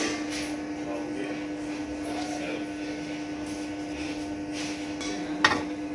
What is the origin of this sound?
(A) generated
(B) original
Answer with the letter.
B